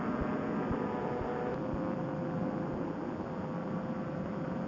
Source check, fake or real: real